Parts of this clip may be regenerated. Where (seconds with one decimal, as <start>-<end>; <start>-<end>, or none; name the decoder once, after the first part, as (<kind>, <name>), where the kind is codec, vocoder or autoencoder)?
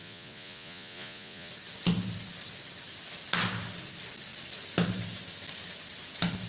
0.0-1.5 (vocoder, Vocos)